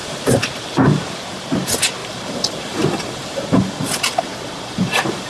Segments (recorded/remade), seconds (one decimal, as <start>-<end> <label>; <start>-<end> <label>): 0.0-1.2 remade; 1.2-2.0 recorded; 2.0-3.6 remade; 3.6-4.3 recorded; 4.3-5.3 remade